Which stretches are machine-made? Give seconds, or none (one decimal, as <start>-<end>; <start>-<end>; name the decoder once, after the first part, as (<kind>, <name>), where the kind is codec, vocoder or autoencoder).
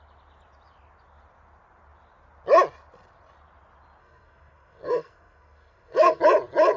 4.0-6.2 (codec, SNAC)